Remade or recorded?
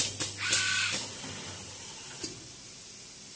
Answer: recorded